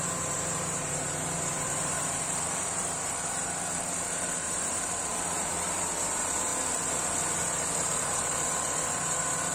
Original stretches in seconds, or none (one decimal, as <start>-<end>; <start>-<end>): 6.5-7.3